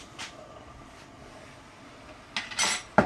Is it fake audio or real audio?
real